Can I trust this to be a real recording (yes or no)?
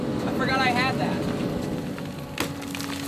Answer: yes